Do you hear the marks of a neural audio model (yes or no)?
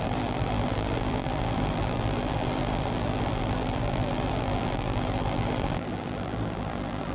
yes